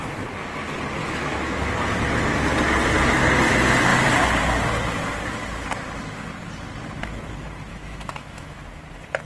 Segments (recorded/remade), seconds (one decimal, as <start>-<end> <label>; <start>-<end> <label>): 0.0-1.0 recorded; 1.0-1.7 remade; 1.7-7.7 recorded; 7.7-8.6 remade; 8.6-9.3 recorded

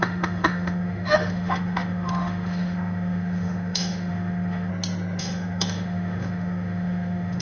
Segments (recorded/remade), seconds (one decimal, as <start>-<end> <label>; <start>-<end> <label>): 0.0-4.7 remade; 4.7-5.2 recorded; 5.2-7.4 remade